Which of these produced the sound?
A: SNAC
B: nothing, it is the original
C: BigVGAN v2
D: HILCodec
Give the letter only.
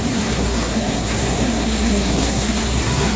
A